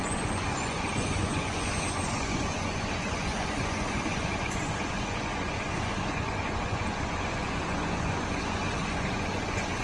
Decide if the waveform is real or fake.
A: fake